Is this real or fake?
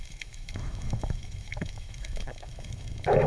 fake